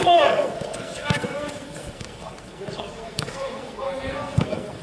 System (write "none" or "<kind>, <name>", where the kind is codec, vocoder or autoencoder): codec, SNAC